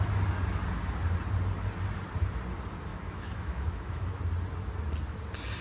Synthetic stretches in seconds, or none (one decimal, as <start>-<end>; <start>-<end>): 2.9-4.2